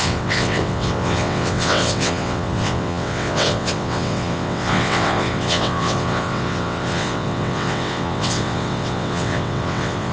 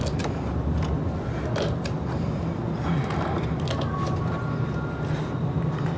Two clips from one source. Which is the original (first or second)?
second